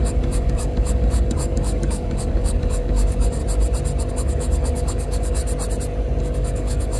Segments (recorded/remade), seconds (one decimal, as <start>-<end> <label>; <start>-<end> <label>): 0.0-3.4 remade; 3.4-4.1 recorded; 4.1-5.4 remade; 5.4-6.2 recorded; 6.2-7.0 remade